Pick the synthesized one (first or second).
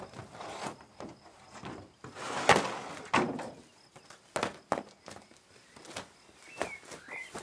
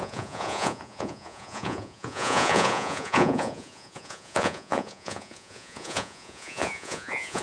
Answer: second